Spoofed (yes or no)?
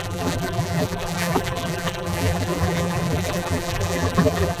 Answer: yes